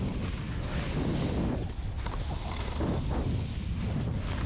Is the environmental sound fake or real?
real